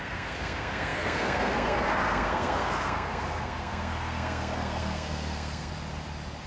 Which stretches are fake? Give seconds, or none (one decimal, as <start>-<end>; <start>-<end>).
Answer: 0.0-5.7